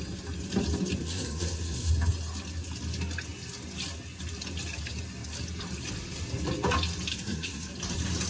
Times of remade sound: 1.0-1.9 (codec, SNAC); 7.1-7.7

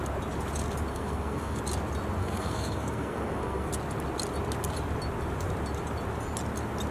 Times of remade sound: 0.9-1.6 (codec, SNAC); 2.2-3.7

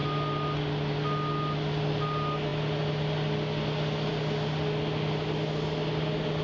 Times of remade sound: none

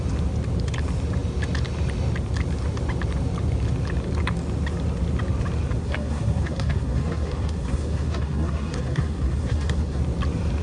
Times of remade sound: 5.8-10.0 (codec, SNAC)

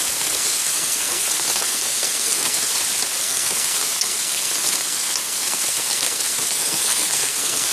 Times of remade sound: 0.0-2.7 (codec, SNAC); 3.2-7.7

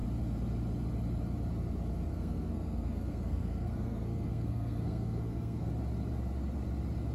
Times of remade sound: 2.1-5.7 (codec, SNAC)

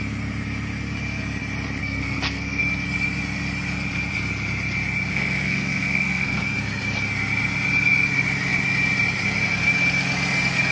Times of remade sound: 1.8-2.6 (codec, SNAC); 5.1-6.4